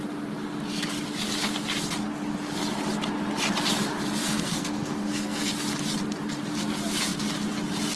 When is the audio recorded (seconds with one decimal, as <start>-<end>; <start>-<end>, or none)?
0.0-4.2; 5.5-8.0